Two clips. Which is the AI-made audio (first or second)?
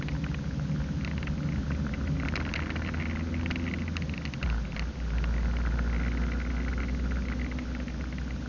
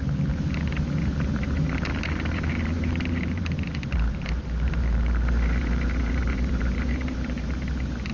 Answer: second